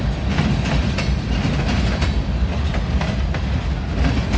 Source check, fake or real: real